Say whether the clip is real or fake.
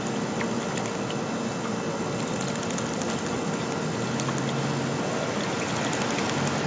real